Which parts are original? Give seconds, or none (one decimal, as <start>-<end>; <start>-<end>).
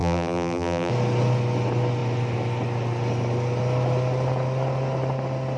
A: 0.9-5.6